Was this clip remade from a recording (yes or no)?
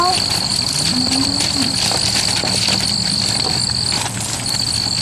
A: yes